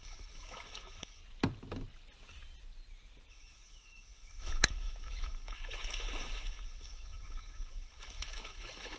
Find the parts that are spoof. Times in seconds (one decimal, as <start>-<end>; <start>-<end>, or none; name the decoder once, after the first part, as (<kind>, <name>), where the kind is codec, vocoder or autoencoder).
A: 0.0-1.2 (autoencoder, DAC-VAE); 3.3-9.0